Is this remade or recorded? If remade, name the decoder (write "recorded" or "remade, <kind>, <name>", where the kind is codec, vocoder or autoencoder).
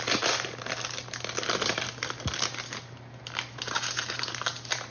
recorded